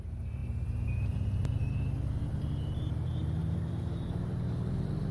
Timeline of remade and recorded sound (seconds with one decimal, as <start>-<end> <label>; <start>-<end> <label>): 0.0-5.1 remade